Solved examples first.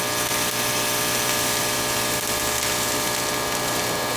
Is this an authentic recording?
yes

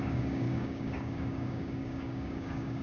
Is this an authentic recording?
no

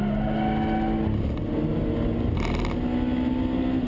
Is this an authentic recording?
yes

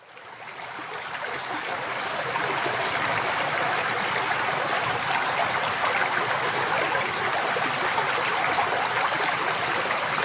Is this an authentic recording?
yes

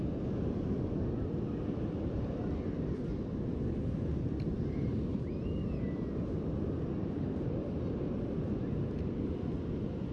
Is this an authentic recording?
yes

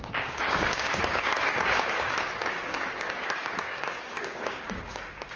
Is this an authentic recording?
no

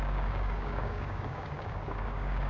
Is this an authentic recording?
no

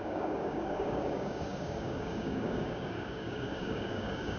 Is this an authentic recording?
no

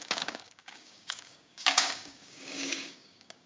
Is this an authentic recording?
no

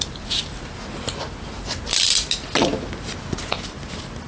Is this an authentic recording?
yes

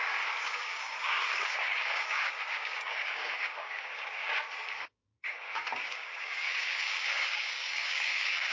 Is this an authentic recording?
no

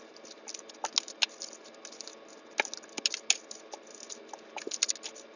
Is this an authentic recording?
yes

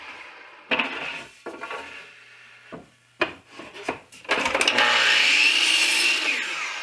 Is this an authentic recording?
yes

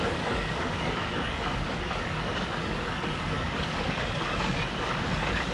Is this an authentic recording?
no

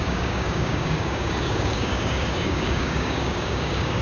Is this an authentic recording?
no